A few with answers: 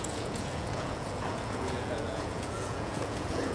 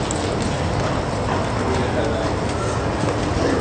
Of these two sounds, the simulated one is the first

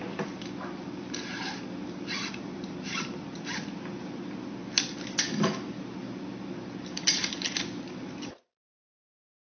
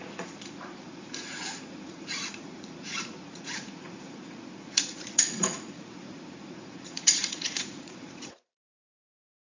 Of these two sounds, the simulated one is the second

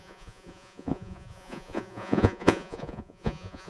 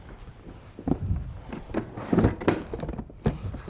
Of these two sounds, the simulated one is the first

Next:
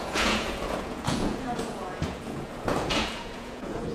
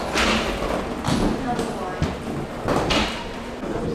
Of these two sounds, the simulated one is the first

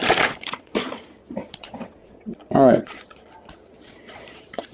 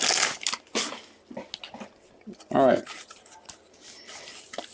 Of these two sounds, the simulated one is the first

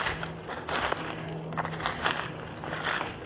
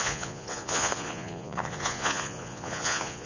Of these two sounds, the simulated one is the second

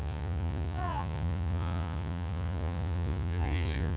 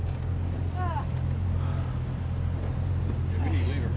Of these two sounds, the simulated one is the first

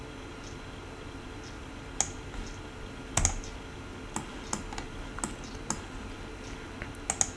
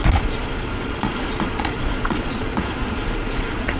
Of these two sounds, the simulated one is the second